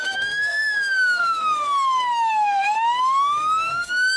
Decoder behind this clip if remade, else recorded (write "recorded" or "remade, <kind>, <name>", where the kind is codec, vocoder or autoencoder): remade, autoencoder, DAC-VAE